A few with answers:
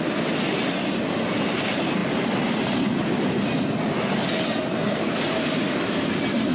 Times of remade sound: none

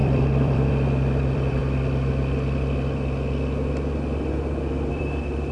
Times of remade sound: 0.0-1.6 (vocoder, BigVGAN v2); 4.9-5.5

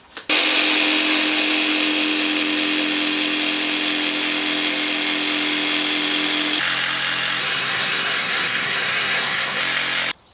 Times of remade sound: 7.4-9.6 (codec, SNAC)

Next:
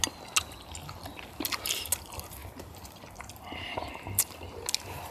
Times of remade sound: none